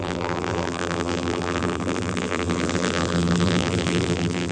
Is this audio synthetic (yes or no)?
yes